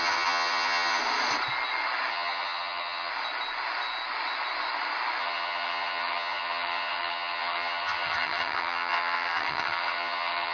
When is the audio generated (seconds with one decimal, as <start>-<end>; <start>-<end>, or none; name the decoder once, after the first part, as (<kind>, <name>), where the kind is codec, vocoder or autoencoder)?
0.0-1.0 (vocoder, HiFi-GAN); 2.1-3.1; 5.2-10.5